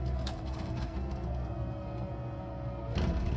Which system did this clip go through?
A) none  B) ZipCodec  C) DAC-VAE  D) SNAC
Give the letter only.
D